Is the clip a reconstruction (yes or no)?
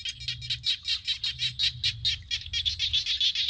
no